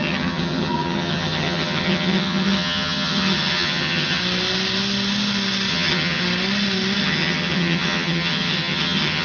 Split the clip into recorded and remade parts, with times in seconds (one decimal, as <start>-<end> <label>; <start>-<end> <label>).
0.0-4.2 remade; 4.2-5.7 recorded; 5.7-6.2 remade; 6.2-7.0 recorded; 7.0-9.2 remade